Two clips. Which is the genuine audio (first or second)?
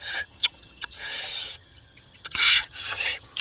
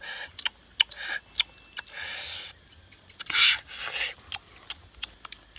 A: second